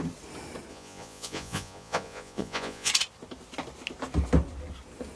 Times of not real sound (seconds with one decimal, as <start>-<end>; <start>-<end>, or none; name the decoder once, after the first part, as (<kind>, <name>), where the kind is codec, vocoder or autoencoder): 0.7-2.9 (vocoder, Vocos)